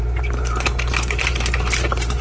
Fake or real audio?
fake